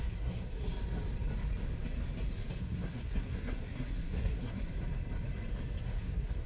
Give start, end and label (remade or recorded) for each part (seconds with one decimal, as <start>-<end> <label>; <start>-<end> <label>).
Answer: 0.0-0.7 remade; 0.7-2.6 recorded; 2.6-4.7 remade; 4.7-5.8 recorded; 5.8-6.5 remade